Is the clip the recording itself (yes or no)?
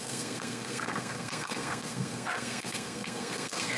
no